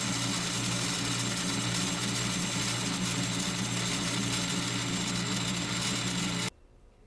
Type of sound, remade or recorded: recorded